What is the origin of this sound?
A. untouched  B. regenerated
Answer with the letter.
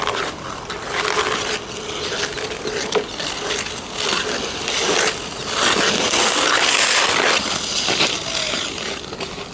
A